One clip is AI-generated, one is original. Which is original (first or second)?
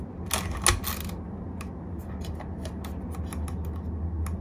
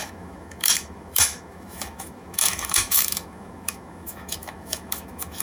first